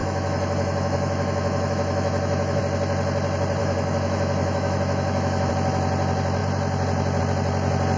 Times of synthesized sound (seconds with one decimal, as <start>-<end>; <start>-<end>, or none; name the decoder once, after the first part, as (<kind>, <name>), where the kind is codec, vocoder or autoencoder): 0.0-2.6 (autoencoder, DAC-VAE); 3.6-5.5